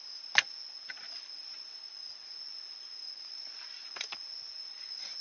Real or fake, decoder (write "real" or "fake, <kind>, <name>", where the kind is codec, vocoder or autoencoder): real